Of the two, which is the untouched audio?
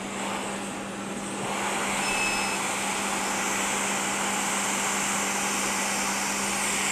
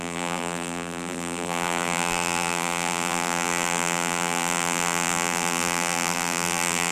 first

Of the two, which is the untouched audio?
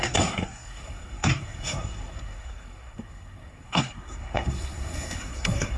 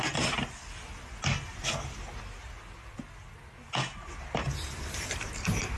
second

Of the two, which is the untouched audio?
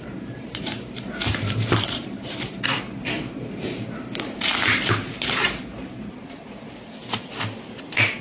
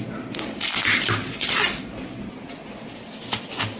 second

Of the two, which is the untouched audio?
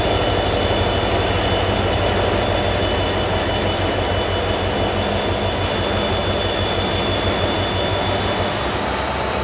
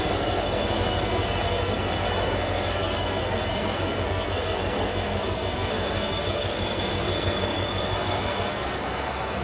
first